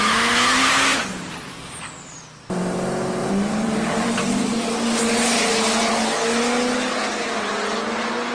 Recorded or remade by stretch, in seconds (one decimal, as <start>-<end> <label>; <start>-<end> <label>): 0.0-0.9 recorded; 0.9-1.6 remade; 1.6-3.2 recorded; 3.2-4.5 remade; 4.5-8.3 recorded